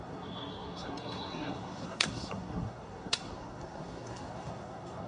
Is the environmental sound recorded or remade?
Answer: remade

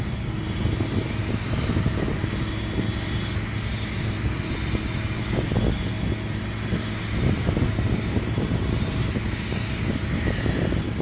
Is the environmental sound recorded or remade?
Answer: recorded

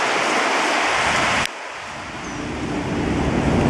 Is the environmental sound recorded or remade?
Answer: recorded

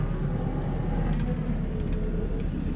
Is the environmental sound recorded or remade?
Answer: recorded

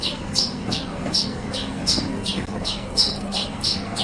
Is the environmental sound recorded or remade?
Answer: remade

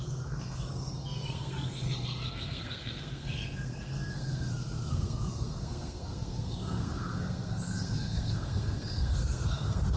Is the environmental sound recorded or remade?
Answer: remade